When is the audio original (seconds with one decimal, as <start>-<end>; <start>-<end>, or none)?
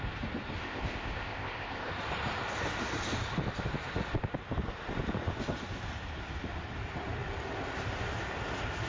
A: 0.0-0.6; 1.9-8.9